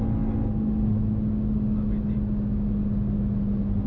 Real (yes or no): yes